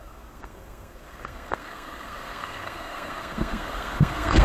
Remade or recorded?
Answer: remade